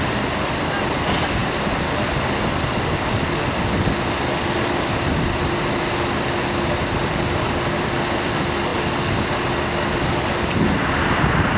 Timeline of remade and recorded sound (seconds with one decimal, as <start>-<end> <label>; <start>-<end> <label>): 0.0-11.6 recorded